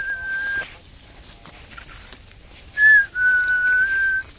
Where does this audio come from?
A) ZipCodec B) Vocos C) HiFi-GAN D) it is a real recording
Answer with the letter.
D